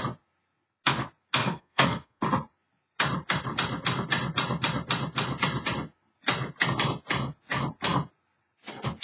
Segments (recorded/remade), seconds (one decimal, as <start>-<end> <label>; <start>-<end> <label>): 0.0-1.4 recorded; 1.4-2.2 remade; 2.2-9.0 recorded